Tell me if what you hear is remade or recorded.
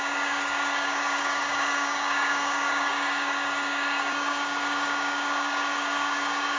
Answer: remade